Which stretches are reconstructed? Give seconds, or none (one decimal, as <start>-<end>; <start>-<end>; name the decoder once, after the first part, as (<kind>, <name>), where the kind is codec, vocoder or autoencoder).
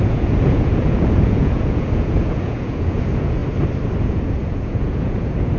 0.0-3.4 (vocoder, Vocos); 4.0-5.6